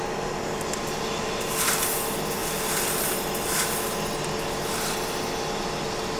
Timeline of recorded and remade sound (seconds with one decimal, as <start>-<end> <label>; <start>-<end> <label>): 0.0-6.2 recorded